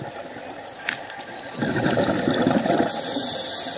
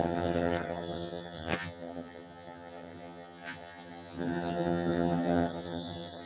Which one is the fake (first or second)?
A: second